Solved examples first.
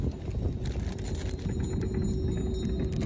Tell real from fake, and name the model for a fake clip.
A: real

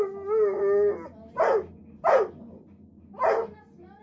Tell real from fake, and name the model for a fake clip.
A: real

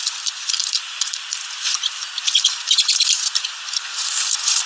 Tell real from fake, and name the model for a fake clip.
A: fake, vocoder, BigVGAN v2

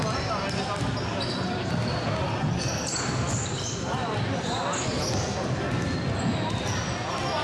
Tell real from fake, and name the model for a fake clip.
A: real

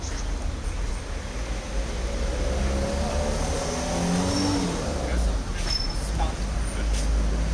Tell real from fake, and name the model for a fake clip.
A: real